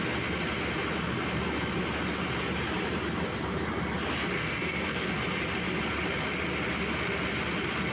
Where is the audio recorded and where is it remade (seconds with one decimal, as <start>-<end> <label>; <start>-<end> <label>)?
0.0-4.4 recorded; 4.4-5.1 remade; 5.1-7.9 recorded